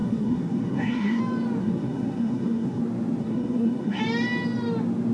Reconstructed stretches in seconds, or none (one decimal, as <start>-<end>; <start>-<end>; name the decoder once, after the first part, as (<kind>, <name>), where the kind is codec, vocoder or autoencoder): 0.0-1.2 (codec, SNAC); 1.6-2.8; 3.2-4.0